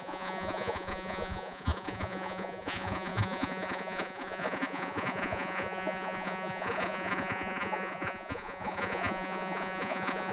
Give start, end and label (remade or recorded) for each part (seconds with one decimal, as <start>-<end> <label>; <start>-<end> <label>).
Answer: 0.0-10.3 remade